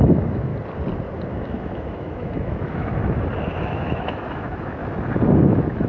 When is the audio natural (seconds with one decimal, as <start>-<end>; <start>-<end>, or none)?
0.5-1.3; 2.9-3.6; 4.8-5.3